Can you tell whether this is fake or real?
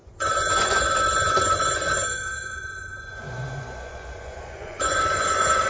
fake